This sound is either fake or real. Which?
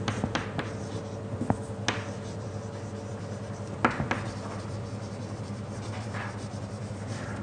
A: real